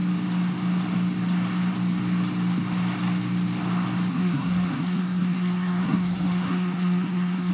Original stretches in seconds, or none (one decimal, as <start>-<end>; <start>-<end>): 0.0-4.1